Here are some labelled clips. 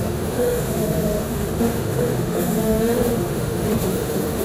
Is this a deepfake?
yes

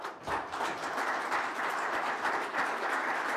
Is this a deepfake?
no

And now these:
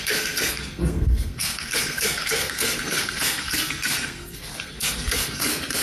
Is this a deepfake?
yes